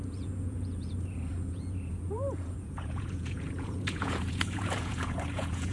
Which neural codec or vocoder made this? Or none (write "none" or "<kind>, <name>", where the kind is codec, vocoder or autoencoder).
vocoder, Vocos